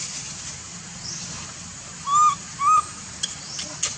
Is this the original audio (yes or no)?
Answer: yes